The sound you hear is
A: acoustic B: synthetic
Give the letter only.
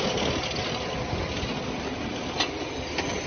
A